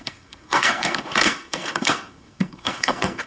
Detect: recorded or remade remade